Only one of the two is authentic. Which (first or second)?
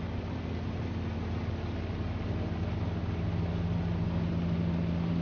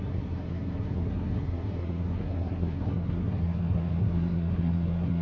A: first